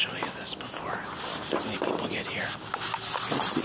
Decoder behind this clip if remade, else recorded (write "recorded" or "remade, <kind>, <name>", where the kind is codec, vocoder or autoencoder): recorded